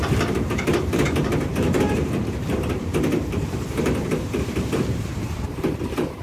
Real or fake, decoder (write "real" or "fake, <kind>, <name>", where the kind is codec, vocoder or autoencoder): fake, vocoder, BigVGAN v2